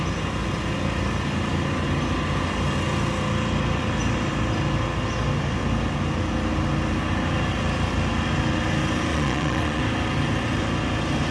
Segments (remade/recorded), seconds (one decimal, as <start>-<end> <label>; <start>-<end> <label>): 0.0-9.1 recorded; 9.1-9.8 remade; 9.8-11.3 recorded